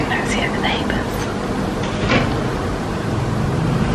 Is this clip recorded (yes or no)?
yes